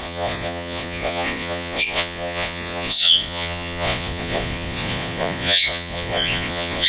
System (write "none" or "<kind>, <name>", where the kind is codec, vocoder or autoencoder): vocoder, Vocos